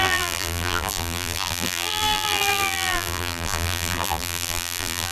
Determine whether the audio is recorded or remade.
remade